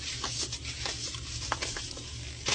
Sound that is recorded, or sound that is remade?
recorded